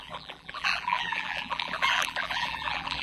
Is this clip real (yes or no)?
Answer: no